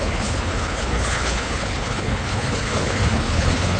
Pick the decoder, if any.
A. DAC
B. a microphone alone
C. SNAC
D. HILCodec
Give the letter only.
D